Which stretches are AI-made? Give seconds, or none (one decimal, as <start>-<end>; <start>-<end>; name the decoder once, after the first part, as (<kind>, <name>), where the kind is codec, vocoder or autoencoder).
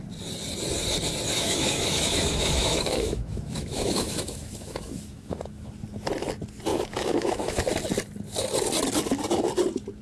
1.3-5.7 (autoencoder, DAC-VAE); 6.7-7.6